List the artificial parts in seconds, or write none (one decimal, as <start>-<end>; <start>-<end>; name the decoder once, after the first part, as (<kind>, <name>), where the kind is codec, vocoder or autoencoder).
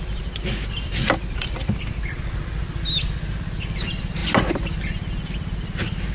none